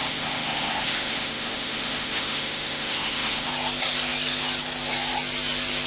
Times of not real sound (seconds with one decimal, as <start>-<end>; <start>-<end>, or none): 0.0-3.5